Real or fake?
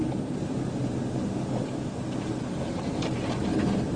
real